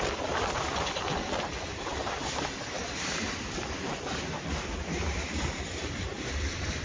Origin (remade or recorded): remade